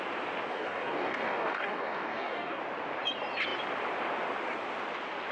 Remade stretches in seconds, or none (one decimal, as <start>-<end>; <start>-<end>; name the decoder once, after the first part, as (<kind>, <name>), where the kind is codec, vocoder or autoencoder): 0.5-2.6 (codec, DAC)